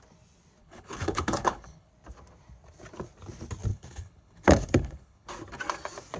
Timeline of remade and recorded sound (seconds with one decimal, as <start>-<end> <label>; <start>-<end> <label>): 0.0-0.6 recorded; 0.6-1.9 remade; 1.9-3.7 recorded; 3.7-5.3 remade; 5.3-6.2 recorded